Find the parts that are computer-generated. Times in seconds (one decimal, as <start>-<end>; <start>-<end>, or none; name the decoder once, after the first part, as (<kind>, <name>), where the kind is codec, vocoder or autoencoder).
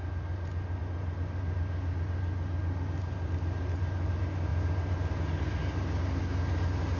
none